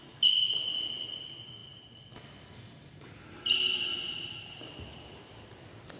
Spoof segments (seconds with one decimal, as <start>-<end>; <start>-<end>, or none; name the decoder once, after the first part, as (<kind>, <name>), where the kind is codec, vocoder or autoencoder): none